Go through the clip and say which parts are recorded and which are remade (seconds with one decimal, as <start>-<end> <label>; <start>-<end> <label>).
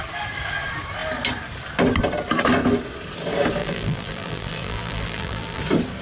0.0-3.6 recorded; 3.6-5.6 remade; 5.6-6.0 recorded